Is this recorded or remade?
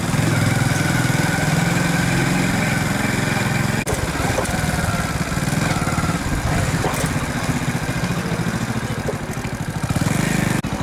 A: recorded